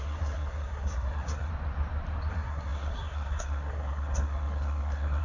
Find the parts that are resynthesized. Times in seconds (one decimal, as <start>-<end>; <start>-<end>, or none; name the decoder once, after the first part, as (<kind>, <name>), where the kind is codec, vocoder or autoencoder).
0.0-1.5 (codec, SNAC); 2.3-5.2